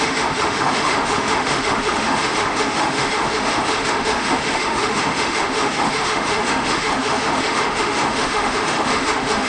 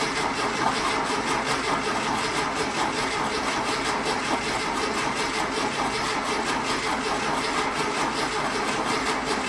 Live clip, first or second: second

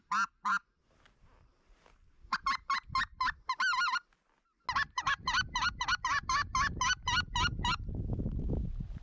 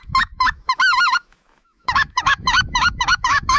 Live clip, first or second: first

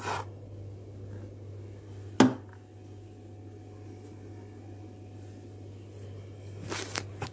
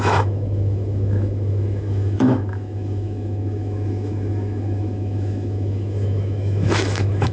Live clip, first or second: first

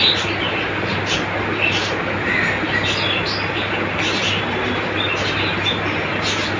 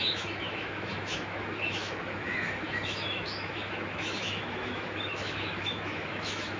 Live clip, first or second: first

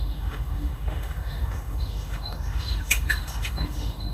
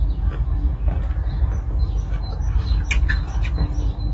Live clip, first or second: second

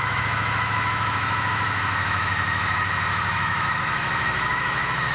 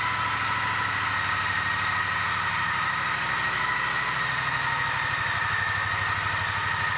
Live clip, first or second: second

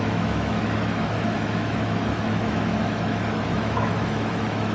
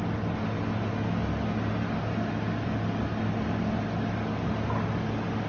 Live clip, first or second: second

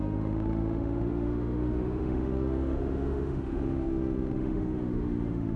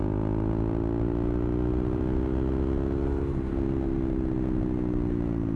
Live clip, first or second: second